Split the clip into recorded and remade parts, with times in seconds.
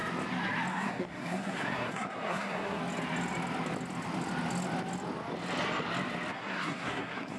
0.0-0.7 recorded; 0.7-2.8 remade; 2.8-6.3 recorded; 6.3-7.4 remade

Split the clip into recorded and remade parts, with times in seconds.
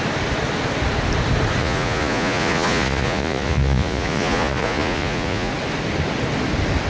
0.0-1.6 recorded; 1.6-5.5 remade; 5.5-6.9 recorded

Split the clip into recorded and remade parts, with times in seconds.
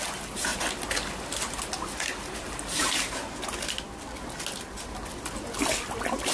0.0-6.3 recorded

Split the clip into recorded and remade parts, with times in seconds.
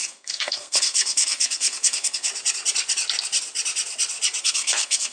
0.0-2.3 remade; 2.3-4.4 recorded; 4.4-5.1 remade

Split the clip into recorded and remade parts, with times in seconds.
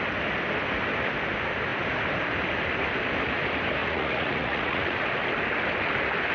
0.0-3.8 recorded; 3.8-5.0 remade; 5.0-6.3 recorded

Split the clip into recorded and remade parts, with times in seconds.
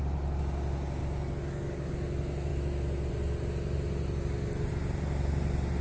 0.0-1.0 recorded; 1.0-1.9 remade; 1.9-5.8 recorded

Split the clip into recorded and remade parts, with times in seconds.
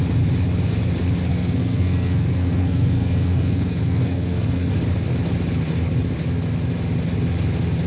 0.0-1.3 recorded; 1.3-4.7 remade; 4.7-7.9 recorded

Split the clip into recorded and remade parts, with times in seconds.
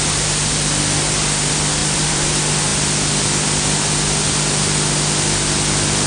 0.0-1.8 recorded; 1.8-2.3 remade; 2.3-6.1 recorded